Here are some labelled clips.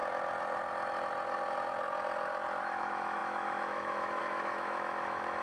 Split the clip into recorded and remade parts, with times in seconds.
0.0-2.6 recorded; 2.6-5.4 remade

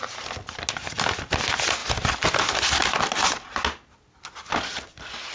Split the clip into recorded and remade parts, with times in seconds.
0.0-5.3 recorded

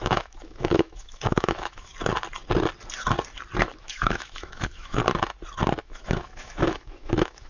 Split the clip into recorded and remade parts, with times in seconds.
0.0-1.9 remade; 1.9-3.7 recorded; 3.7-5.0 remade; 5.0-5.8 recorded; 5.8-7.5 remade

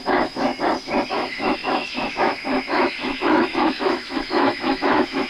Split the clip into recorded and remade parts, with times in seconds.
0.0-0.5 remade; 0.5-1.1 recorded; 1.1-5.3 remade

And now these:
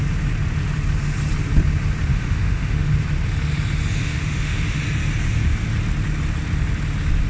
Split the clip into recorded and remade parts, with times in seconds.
0.0-2.1 recorded; 2.1-2.9 remade; 2.9-4.0 recorded; 4.0-4.8 remade; 4.8-7.3 recorded